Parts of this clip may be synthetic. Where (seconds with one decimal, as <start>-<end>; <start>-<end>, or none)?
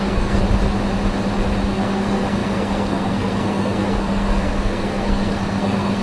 0.0-0.4; 1.7-6.0